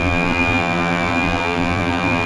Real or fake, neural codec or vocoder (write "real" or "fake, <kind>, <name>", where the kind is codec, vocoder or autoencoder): fake, vocoder, BigVGAN v2